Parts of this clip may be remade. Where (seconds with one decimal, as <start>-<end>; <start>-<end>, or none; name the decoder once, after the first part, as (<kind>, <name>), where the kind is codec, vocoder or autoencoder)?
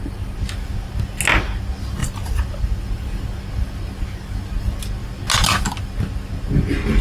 2.0-2.9 (vocoder, BigVGAN v2)